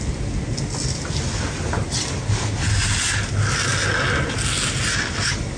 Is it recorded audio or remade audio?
recorded